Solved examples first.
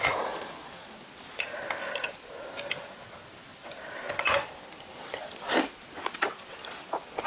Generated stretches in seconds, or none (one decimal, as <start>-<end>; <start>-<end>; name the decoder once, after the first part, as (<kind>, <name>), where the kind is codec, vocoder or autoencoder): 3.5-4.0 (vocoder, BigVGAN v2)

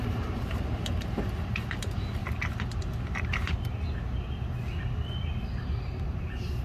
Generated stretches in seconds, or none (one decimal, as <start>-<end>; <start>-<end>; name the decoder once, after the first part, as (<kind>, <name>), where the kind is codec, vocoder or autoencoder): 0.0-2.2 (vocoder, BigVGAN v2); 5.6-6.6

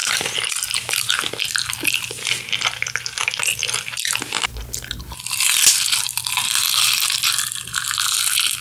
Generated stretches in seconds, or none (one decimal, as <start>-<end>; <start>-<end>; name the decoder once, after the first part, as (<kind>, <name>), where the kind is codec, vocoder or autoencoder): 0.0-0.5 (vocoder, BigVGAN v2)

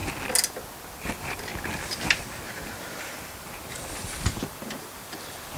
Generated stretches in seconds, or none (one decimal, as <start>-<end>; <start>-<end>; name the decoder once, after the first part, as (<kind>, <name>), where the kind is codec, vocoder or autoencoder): 1.0-1.5 (vocoder, BigVGAN v2); 2.4-5.6